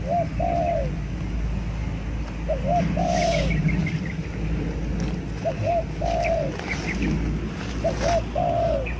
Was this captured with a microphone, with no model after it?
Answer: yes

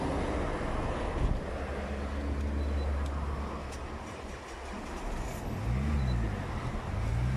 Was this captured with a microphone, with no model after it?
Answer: yes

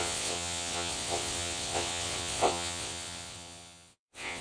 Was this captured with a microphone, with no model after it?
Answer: no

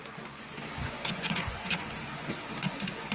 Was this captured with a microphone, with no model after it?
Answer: no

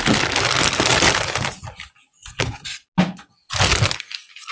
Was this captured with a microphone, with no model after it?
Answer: yes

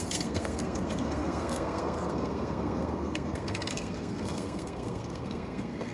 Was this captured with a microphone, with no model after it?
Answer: no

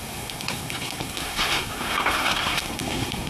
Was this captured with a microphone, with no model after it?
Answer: no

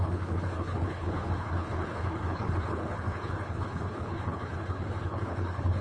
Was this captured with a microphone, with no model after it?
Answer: no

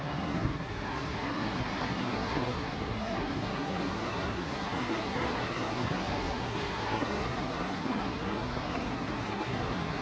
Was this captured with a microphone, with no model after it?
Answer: no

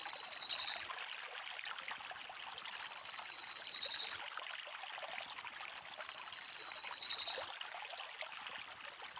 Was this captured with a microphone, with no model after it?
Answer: yes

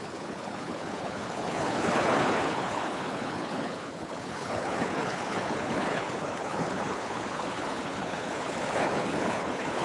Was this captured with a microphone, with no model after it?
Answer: no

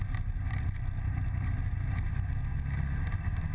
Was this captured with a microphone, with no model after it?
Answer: yes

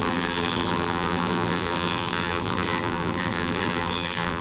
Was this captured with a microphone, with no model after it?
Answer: no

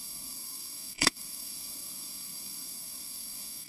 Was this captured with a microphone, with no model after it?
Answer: no